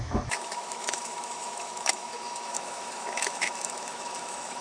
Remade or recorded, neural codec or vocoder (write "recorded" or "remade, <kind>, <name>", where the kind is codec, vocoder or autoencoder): remade, autoencoder, DAC-VAE